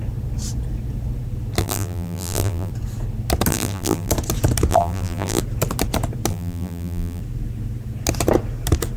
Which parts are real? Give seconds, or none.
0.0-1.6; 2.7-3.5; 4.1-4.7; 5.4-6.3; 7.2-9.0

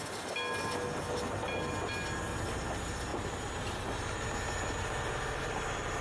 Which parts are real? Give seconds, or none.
0.0-6.0

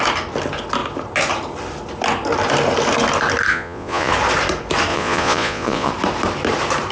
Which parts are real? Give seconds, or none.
0.0-3.5; 4.1-4.9; 5.9-6.9

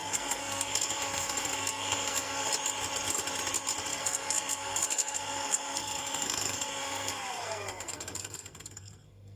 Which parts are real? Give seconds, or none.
2.5-3.9

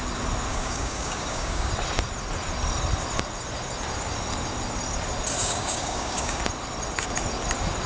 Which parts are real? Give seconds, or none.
0.0-0.5; 1.7-5.4; 6.4-7.9

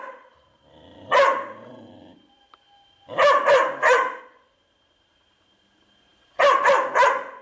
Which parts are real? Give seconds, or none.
4.2-7.4

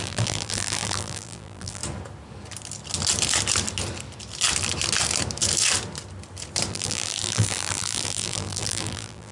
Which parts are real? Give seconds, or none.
1.8-6.7